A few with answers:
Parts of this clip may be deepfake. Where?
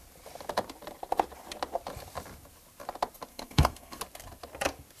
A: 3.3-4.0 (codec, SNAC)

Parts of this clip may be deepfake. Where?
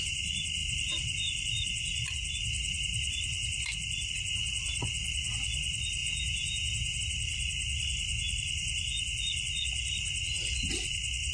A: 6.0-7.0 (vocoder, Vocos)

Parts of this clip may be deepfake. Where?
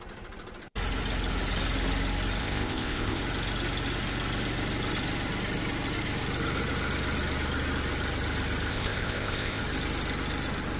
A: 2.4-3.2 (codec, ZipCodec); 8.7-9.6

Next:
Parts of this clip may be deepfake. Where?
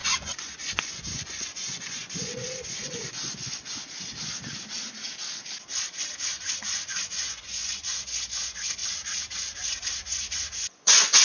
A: 0.0-3.7 (vocoder, Vocos); 6.7-8.8; 10.7-11.2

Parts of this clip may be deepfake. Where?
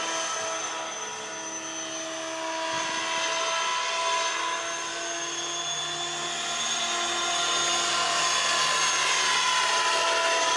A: none